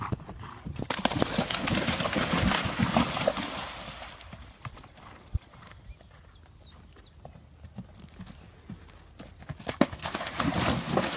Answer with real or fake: real